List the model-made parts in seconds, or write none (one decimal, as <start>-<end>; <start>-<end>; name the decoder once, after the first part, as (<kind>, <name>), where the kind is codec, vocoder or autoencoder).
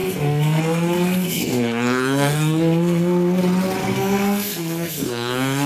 0.0-3.4 (codec, SNAC); 3.8-5.7